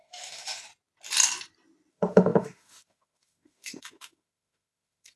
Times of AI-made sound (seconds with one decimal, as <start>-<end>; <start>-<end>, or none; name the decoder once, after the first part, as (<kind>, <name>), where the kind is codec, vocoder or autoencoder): 0.0-0.7 (autoencoder, DAC-VAE); 1.9-5.2